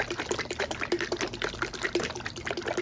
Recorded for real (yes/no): yes